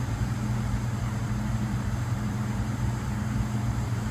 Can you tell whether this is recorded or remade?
remade